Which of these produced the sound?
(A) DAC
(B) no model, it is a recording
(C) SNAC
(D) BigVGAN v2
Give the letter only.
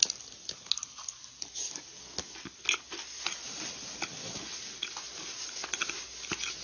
B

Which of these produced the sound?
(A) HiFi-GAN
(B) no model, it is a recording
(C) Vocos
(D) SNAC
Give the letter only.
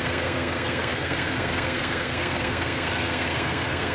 D